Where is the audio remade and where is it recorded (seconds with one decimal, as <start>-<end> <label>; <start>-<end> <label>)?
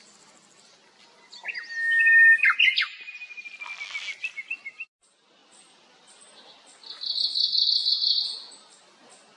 0.0-9.4 recorded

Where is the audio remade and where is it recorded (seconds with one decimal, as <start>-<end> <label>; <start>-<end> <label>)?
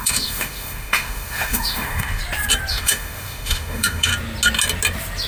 0.0-2.2 remade; 2.2-2.7 recorded; 2.7-4.1 remade; 4.1-5.3 recorded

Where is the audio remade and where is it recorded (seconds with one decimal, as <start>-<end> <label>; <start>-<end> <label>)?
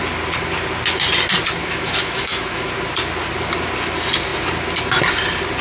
0.0-1.6 recorded; 1.6-2.7 remade; 2.7-5.6 recorded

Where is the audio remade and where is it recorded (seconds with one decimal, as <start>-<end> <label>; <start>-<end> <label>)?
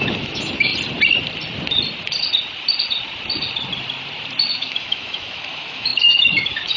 0.0-0.7 remade; 0.7-4.5 recorded; 4.5-6.8 remade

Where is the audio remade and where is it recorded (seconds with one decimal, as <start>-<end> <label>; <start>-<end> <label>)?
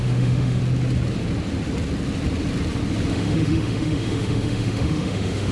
0.0-0.6 remade; 0.6-3.1 recorded; 3.1-5.5 remade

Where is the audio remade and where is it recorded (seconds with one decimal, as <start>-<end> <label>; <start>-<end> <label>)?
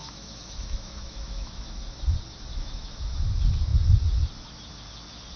0.0-1.8 remade; 1.8-2.5 recorded; 2.5-3.1 remade; 3.1-5.4 recorded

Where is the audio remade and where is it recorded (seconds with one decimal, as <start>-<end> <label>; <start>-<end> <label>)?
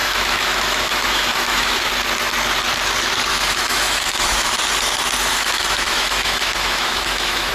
0.0-1.9 remade; 1.9-3.3 recorded; 3.3-4.6 remade; 4.6-5.3 recorded; 5.3-7.5 remade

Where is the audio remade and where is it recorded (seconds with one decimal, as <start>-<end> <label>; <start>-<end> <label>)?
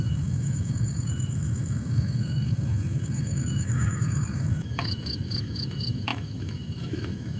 0.0-7.4 remade